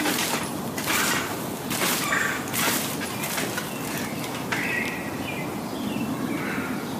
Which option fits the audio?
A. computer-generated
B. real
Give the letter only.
B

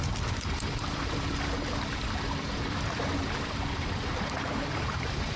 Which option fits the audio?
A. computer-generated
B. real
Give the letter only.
A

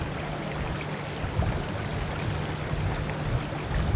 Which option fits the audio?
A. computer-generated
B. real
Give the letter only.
B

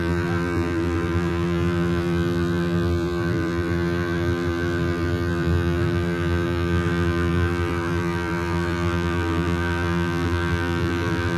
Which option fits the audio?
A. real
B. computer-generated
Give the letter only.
B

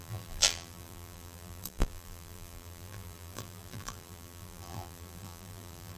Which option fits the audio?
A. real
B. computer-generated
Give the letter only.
B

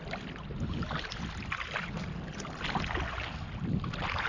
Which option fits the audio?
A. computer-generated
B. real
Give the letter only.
B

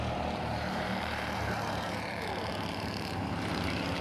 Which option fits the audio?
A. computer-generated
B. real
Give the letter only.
A